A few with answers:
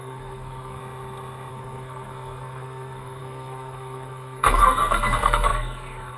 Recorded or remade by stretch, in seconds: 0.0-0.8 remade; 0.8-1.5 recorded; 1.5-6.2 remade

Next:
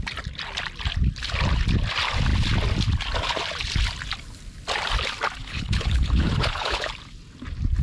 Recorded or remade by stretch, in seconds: 0.0-5.4 recorded; 5.4-6.9 remade; 6.9-7.8 recorded

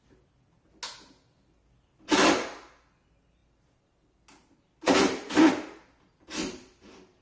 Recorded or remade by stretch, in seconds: 0.0-7.2 recorded

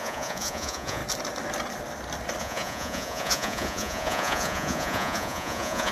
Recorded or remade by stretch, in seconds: 0.0-1.0 remade; 1.0-2.4 recorded; 2.4-5.9 remade

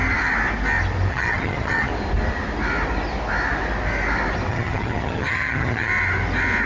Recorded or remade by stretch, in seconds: 0.0-1.1 recorded; 1.1-1.9 remade; 1.9-4.5 recorded; 4.5-5.9 remade; 5.9-6.7 recorded

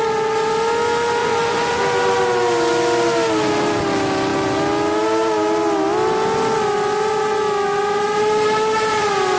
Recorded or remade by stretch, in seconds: 0.0-1.2 recorded; 1.2-1.8 remade; 1.8-9.4 recorded